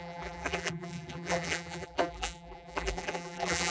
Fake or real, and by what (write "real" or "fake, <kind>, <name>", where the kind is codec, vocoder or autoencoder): fake, vocoder, BigVGAN v2